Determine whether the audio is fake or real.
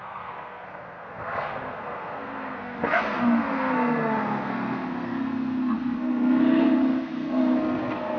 fake